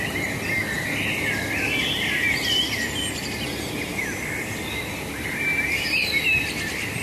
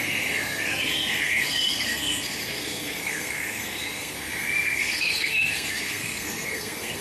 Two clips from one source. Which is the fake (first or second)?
second